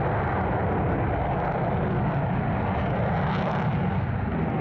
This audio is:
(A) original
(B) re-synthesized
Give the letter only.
A